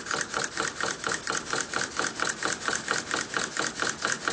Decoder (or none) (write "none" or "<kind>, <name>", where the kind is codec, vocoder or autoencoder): none